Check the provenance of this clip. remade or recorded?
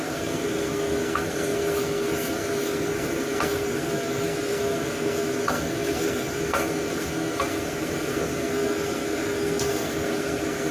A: remade